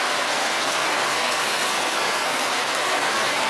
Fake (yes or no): yes